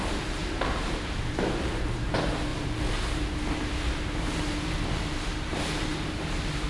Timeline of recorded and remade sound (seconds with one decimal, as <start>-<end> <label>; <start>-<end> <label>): 0.0-0.4 recorded; 0.4-2.1 remade; 2.1-2.5 recorded; 2.5-6.7 remade